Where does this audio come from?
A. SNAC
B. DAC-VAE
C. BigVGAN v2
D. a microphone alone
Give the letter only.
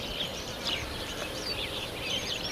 C